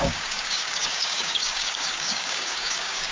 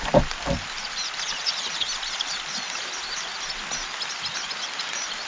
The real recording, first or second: second